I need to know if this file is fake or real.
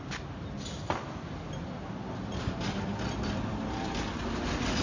real